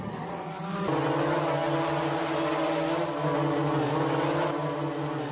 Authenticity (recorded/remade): recorded